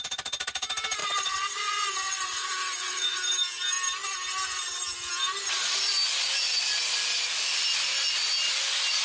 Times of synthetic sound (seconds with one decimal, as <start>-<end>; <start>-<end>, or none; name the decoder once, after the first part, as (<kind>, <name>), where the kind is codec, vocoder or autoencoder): 1.0-3.2 (vocoder, WaveNeXt)